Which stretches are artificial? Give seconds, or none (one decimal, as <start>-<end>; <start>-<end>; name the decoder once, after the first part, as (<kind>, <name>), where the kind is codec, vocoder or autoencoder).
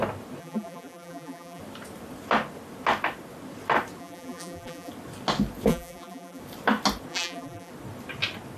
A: 0.4-1.6 (vocoder, BigVGAN v2); 4.0-4.9; 5.7-6.4; 7.1-7.7